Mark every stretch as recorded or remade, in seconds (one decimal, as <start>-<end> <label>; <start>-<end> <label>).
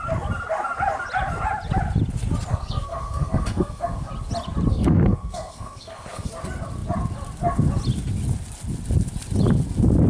0.0-2.5 recorded; 2.5-4.0 remade; 4.0-4.7 recorded; 4.7-6.3 remade; 6.3-10.1 recorded